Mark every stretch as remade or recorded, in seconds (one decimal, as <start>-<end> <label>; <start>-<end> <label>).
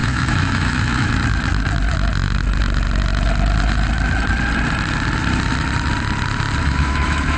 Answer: 0.0-1.1 remade; 1.1-6.6 recorded; 6.6-7.4 remade